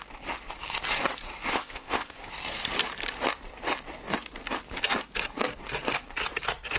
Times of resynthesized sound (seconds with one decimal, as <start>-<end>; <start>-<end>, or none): 1.5-2.3